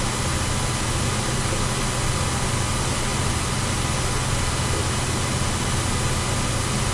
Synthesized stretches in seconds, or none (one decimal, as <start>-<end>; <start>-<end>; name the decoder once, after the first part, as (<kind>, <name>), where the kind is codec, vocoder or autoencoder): none